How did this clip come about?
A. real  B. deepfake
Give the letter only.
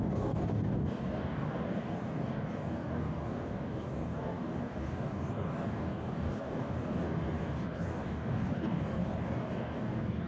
B